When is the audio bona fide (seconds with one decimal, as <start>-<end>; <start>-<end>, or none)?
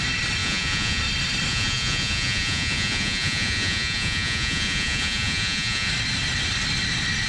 0.0-0.4; 1.0-1.5; 5.9-7.3